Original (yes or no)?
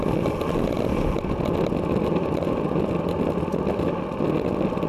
yes